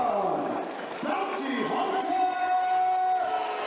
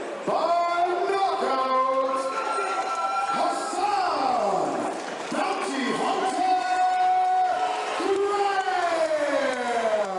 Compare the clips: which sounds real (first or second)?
first